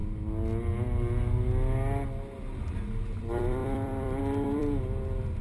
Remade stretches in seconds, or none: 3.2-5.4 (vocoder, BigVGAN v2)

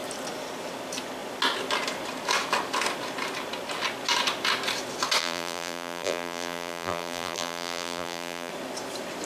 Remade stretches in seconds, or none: 5.2-8.5 (vocoder, BigVGAN v2)

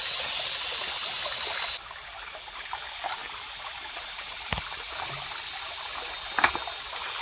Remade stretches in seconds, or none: none

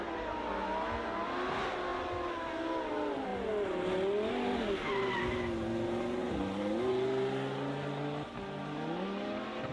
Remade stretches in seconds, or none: none

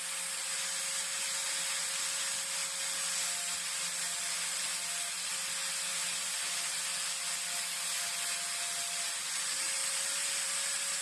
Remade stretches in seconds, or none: 1.4-2.1 (vocoder, BigVGAN v2); 9.8-10.5